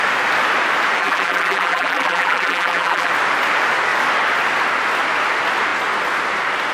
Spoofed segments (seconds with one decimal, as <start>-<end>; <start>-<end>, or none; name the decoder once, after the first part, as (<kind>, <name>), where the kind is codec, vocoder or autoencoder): 1.0-3.1 (vocoder, BigVGAN v2)